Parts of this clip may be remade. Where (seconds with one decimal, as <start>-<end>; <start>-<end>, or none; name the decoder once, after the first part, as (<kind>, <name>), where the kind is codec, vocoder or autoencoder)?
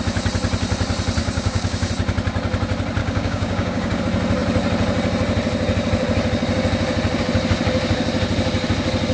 1.2-1.9 (codec, DAC); 3.0-4.0